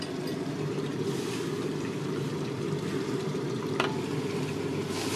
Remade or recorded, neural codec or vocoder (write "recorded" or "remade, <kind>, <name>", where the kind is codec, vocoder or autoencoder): recorded